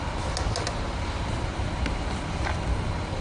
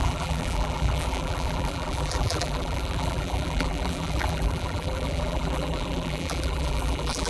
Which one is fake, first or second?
second